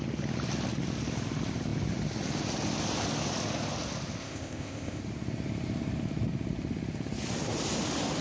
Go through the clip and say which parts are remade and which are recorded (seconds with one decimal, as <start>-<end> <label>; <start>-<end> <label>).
0.0-4.2 recorded; 4.2-5.0 remade; 5.0-8.2 recorded